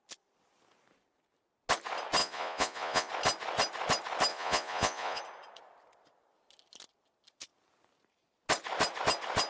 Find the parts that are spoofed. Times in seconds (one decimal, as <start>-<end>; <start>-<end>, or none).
2.2-3.1; 4.3-5.2